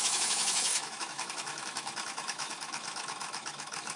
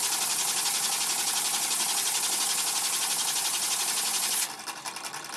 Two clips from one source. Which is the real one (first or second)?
second